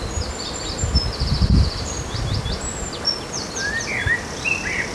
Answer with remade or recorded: recorded